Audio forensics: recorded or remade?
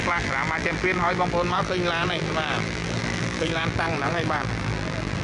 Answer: remade